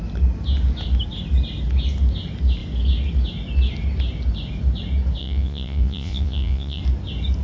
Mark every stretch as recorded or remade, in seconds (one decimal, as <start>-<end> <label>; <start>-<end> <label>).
0.0-5.2 recorded; 5.2-6.8 remade; 6.8-7.4 recorded